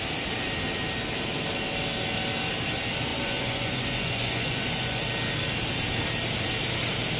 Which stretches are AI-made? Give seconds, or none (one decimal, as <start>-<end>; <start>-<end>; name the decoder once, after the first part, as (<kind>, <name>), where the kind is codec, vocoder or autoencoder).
3.1-5.0 (vocoder, Vocos)